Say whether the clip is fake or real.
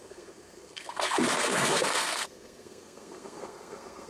fake